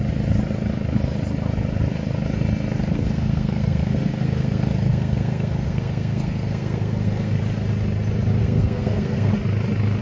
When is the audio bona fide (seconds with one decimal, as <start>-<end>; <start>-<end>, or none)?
0.0-2.8; 7.4-8.4; 9.3-10.0